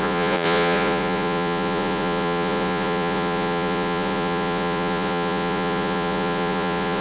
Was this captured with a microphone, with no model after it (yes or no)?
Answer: no